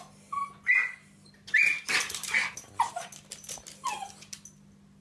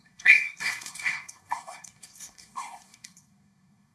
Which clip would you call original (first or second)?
first